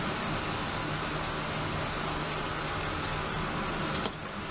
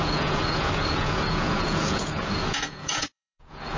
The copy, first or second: second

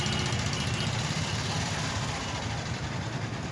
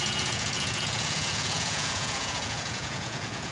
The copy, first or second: second